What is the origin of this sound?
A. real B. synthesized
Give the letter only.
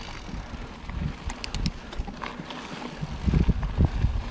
A